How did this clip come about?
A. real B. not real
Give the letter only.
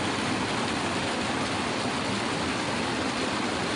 A